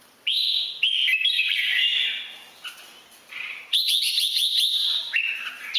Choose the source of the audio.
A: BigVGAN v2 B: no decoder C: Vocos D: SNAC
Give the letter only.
A